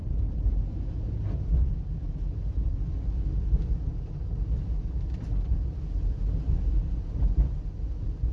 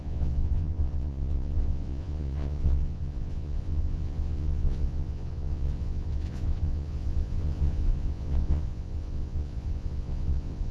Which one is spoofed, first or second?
second